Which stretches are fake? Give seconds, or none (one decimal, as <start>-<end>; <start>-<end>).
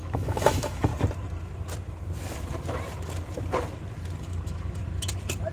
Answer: 0.0-0.9; 4.2-4.8